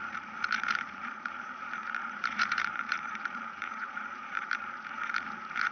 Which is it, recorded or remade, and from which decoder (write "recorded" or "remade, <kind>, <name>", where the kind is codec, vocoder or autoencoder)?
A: remade, vocoder, Vocos